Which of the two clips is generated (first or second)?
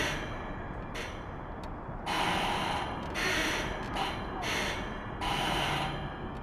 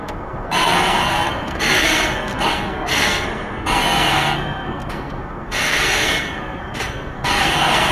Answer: second